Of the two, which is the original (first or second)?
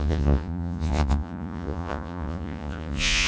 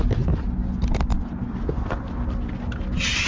second